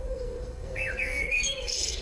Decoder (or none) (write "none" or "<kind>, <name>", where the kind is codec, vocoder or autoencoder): codec, SNAC